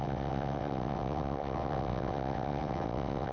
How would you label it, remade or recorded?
remade